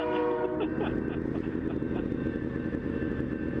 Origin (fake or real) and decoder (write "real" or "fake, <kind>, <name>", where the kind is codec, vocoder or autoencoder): real